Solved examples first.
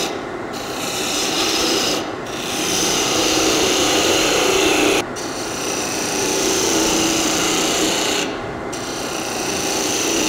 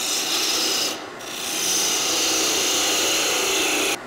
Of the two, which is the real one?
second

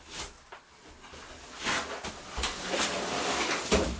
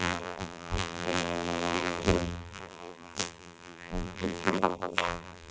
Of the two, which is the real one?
first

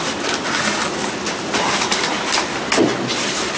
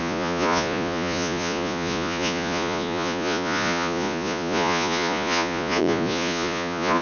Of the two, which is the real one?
first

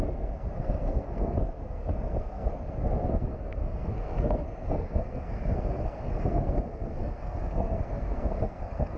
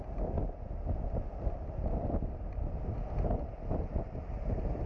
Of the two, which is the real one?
second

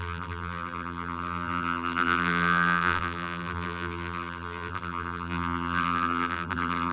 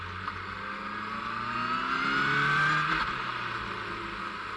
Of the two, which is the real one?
second